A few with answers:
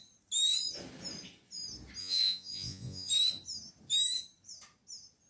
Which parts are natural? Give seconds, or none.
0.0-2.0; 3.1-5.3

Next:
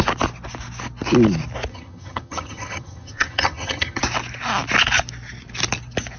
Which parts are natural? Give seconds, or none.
0.0-1.7; 4.0-6.2

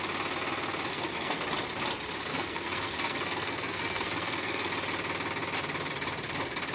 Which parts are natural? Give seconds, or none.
0.0-0.9; 1.4-2.3; 4.7-6.7

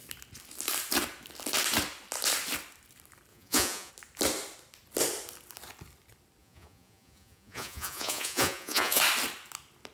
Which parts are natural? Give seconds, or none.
0.0-3.3; 3.9-6.4; 9.0-9.9

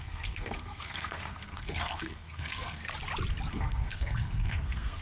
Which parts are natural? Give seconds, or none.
2.8-3.5

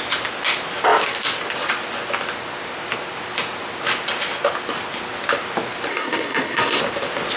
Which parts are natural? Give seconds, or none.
0.0-5.9; 6.8-7.4

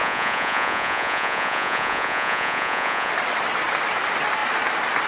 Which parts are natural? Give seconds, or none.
3.1-5.1